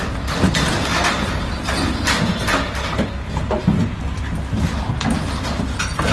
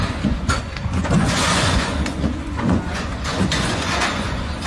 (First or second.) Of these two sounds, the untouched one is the first